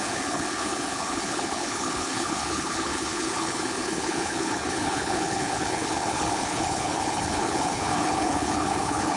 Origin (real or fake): fake